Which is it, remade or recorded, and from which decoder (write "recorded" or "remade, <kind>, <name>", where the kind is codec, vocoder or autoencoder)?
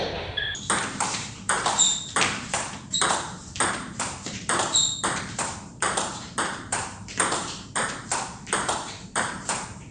remade, vocoder, BigVGAN v2